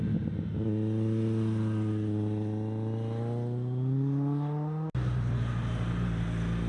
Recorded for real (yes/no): yes